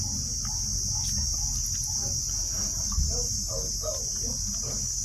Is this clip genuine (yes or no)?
yes